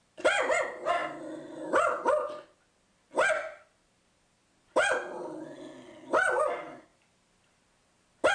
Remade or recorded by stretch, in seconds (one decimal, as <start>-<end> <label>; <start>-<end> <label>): 0.0-8.3 recorded

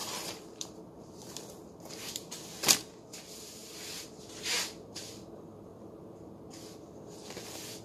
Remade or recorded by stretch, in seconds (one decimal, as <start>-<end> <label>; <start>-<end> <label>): 0.0-1.9 remade; 1.9-5.7 recorded; 5.7-6.4 remade; 6.4-7.8 recorded

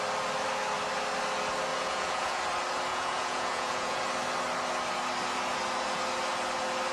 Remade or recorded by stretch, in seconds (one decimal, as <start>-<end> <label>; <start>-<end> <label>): 0.0-1.7 recorded; 1.7-2.4 remade; 2.4-2.9 recorded; 2.9-4.0 remade; 4.0-6.9 recorded

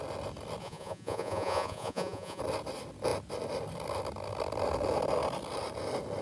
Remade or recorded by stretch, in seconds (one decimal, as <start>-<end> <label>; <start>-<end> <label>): 0.0-0.6 recorded; 0.6-2.4 remade; 2.4-6.2 recorded